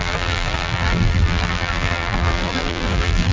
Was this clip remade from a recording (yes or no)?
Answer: yes